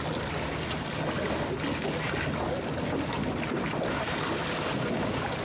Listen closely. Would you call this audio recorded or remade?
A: recorded